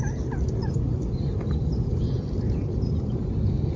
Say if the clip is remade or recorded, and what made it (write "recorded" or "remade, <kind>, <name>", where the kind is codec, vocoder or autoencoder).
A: recorded